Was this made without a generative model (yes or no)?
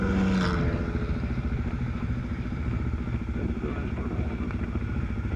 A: yes